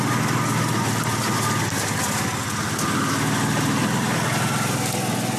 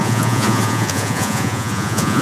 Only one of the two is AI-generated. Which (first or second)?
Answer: second